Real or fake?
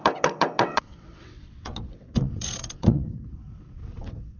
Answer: fake